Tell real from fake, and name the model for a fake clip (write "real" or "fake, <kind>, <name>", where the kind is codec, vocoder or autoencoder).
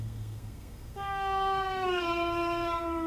fake, codec, SNAC